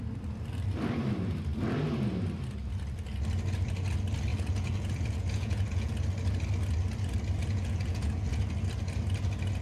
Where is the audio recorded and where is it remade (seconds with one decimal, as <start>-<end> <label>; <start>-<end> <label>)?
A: 0.0-4.3 recorded; 4.3-5.9 remade; 5.9-7.4 recorded; 7.4-8.4 remade; 8.4-9.6 recorded